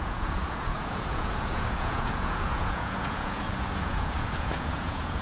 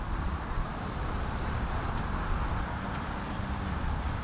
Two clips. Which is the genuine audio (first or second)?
second